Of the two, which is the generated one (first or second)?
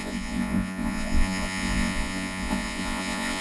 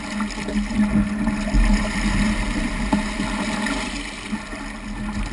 first